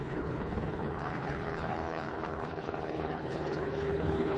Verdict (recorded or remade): remade